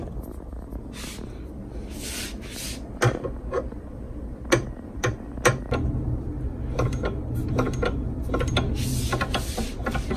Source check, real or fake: real